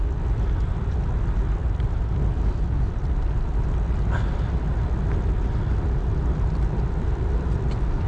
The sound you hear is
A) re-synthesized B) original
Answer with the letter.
B